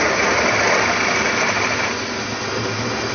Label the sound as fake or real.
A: real